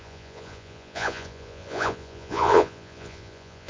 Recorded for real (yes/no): no